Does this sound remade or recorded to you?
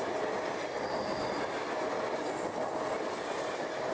recorded